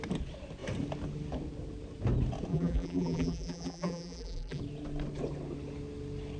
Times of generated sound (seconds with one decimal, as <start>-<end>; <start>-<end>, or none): 2.5-4.6